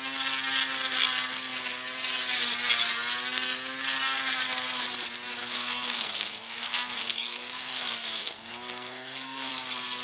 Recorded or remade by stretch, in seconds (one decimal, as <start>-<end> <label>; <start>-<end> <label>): 0.0-5.4 recorded; 5.4-9.5 remade; 9.5-10.0 recorded